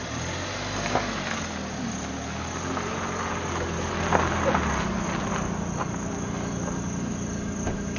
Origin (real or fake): real